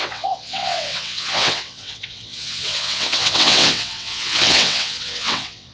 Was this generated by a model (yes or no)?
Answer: yes